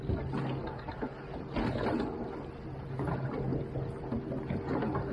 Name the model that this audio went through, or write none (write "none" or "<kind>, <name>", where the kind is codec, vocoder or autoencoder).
none